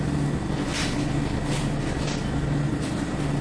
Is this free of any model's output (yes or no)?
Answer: yes